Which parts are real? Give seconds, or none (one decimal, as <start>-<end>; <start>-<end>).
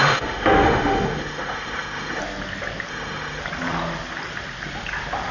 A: 2.2-2.9; 3.4-5.3